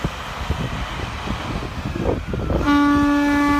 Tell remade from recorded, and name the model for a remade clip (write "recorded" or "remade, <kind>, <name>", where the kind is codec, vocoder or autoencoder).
recorded